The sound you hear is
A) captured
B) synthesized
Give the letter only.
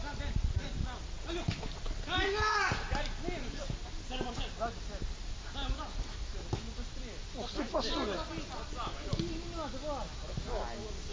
A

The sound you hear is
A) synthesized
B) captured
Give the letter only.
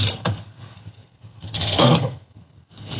A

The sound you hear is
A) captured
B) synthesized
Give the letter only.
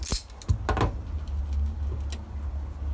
A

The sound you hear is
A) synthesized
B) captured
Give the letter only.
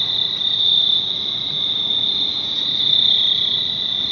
B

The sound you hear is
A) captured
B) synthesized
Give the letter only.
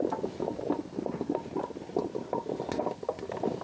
A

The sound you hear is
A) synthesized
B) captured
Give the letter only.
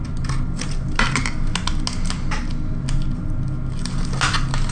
B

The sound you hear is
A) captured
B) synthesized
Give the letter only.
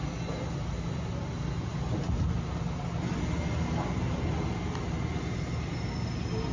A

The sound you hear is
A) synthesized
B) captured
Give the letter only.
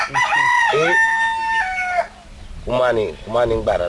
B